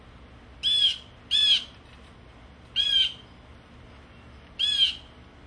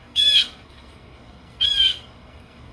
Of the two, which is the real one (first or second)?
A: first